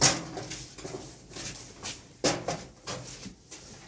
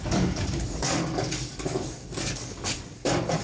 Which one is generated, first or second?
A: second